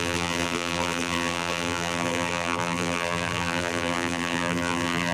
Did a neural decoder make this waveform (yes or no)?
yes